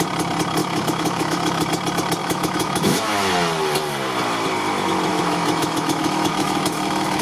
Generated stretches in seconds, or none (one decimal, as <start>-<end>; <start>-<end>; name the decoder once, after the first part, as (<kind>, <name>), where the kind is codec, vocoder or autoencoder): 0.6-1.7 (autoencoder, DAC-VAE); 2.2-3.3; 5.1-7.2